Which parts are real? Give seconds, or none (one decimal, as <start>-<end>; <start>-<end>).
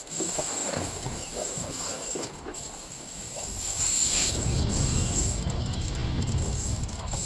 none